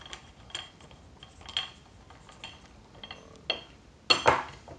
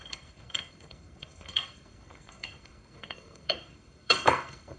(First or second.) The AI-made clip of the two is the second